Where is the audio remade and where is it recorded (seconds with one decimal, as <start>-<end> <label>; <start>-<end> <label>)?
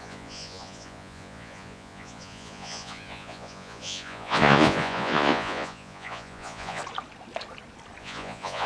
0.0-6.8 remade; 6.8-8.0 recorded; 8.0-8.7 remade